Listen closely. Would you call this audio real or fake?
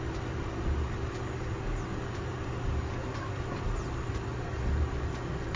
real